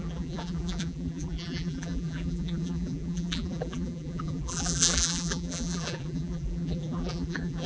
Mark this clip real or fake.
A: fake